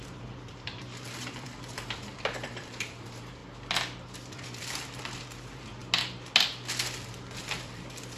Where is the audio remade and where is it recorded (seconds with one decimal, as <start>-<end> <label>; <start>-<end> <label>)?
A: 0.0-3.4 remade; 3.4-4.3 recorded; 4.3-5.8 remade; 5.8-7.4 recorded; 7.4-8.2 remade